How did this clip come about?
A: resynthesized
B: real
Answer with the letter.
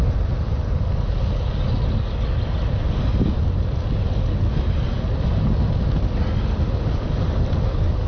B